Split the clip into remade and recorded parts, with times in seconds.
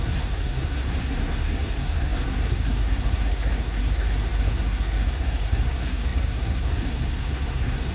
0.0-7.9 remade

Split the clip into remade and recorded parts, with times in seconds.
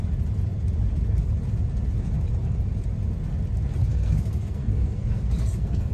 0.0-3.8 recorded; 3.8-5.9 remade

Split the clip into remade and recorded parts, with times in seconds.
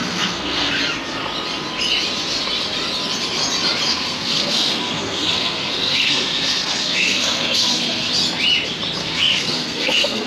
0.0-0.7 remade; 0.7-3.9 recorded; 3.9-8.1 remade; 8.1-9.0 recorded; 9.0-10.3 remade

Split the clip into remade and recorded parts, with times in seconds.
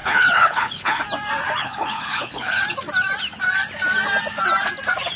0.0-1.0 remade; 1.0-1.6 recorded; 1.6-2.6 remade; 2.6-5.2 recorded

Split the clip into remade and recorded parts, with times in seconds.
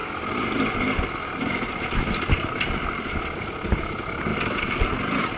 0.0-5.4 recorded